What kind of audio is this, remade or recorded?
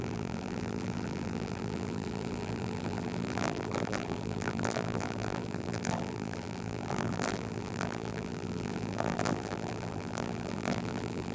remade